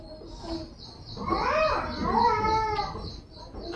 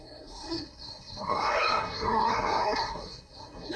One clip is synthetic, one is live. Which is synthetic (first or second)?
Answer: second